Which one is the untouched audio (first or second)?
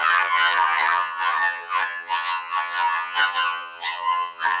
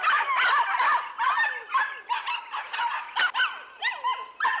second